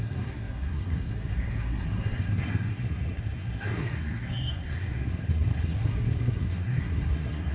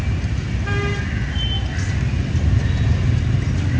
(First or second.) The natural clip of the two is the second